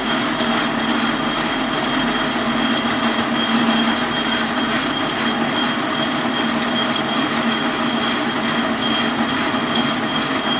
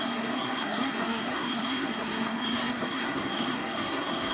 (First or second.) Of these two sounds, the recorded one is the first